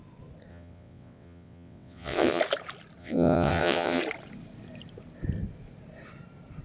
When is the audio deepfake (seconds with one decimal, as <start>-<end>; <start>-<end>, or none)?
0.5-2.4; 3.0-4.0